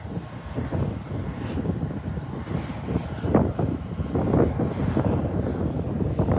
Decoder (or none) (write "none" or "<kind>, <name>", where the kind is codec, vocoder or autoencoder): none